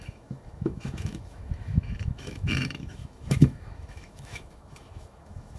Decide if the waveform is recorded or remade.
remade